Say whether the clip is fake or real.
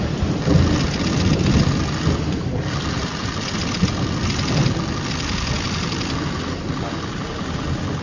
real